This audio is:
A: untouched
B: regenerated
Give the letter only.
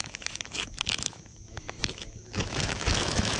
B